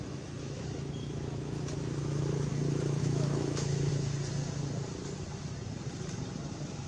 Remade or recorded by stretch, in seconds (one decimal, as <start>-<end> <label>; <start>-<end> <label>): 0.0-2.5 remade; 2.5-3.0 recorded; 3.0-3.9 remade; 3.9-6.5 recorded; 6.5-6.9 remade